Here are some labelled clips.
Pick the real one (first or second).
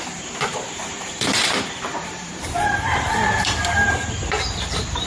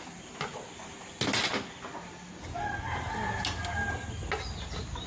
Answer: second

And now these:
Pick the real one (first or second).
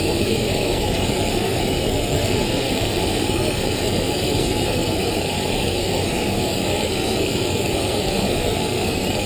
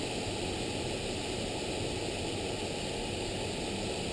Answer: second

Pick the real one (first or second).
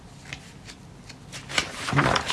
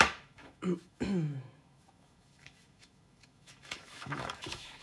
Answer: first